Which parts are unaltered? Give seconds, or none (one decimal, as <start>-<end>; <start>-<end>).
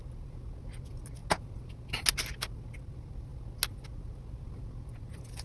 0.0-5.4